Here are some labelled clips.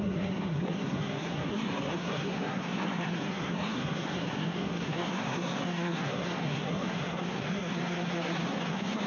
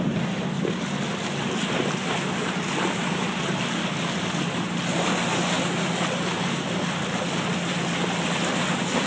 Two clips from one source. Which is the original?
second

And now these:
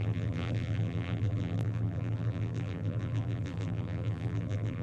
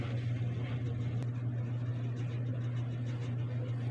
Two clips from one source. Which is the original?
second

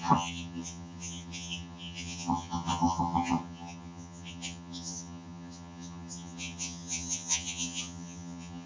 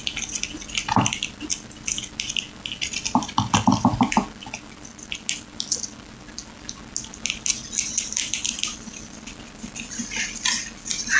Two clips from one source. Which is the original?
second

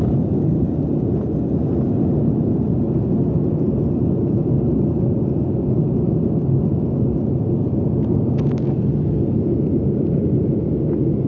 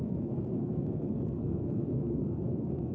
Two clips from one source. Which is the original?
first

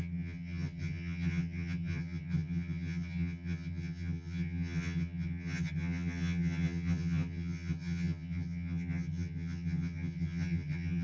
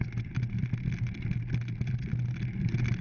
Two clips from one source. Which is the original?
second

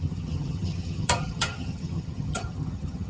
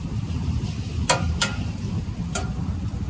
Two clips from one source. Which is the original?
second